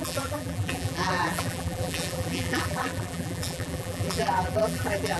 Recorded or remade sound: remade